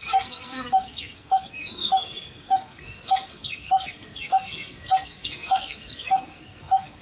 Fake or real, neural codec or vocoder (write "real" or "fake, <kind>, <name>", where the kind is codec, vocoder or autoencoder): fake, codec, SNAC